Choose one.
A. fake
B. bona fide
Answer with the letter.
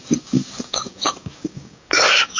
A